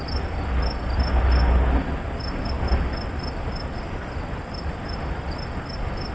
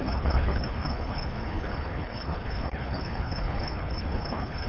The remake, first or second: second